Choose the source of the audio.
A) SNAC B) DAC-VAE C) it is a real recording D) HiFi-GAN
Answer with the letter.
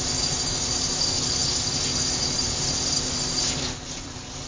C